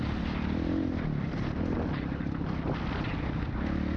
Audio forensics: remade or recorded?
recorded